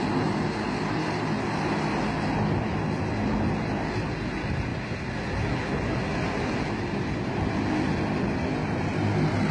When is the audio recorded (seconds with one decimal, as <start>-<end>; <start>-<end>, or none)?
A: 0.0-9.5